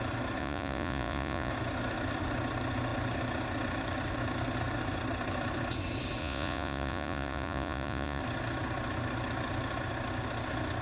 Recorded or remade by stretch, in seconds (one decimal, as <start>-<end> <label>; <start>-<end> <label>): 0.0-0.4 recorded; 0.4-1.5 remade; 1.5-6.2 recorded; 6.2-8.2 remade; 8.2-10.8 recorded